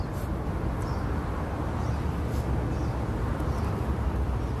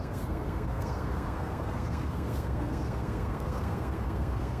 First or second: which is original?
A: first